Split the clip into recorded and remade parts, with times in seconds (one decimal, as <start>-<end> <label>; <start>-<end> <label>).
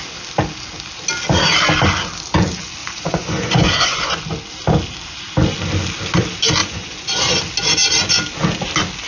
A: 0.0-2.8 recorded; 2.8-4.2 remade; 4.2-6.6 recorded; 6.6-7.4 remade; 7.4-9.1 recorded